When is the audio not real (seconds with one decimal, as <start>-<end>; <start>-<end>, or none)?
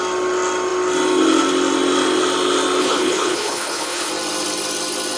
2.8-4.1